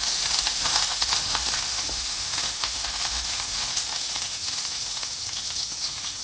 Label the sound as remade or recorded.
remade